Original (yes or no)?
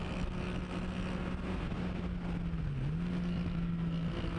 yes